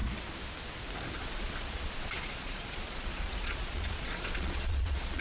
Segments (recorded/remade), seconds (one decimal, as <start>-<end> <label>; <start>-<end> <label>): 0.0-1.2 recorded; 1.2-5.2 remade